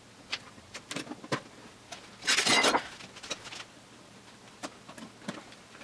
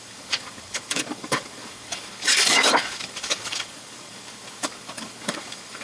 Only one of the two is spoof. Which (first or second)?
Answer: second